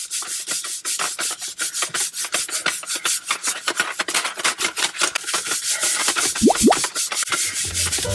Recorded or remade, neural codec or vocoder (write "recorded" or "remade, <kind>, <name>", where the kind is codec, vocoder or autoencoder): recorded